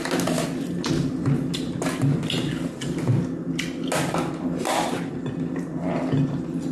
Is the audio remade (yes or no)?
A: no